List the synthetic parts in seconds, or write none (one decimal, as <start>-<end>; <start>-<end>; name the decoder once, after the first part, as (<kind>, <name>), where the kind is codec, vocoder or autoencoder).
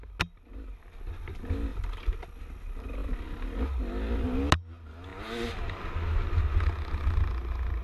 none